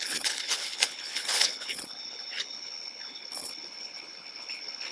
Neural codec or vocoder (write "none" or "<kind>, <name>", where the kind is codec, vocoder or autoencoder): codec, HILCodec